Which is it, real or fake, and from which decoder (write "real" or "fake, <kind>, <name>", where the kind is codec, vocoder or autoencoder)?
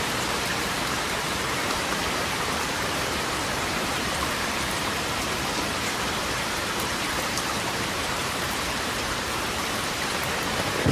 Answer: fake, vocoder, BigVGAN v2